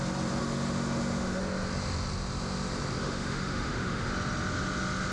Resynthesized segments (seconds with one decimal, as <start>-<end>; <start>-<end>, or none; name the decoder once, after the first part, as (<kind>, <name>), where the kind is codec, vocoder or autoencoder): 0.4-1.4 (autoencoder, DAC-VAE); 3.0-4.1